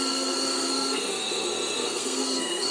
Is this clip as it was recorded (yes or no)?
no